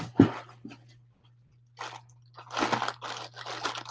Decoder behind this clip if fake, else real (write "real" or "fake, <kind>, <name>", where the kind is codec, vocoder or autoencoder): real